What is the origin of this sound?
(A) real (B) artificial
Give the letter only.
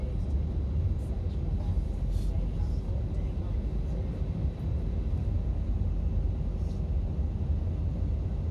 A